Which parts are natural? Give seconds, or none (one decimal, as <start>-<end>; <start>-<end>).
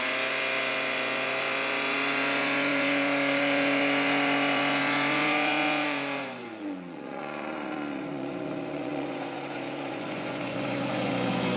none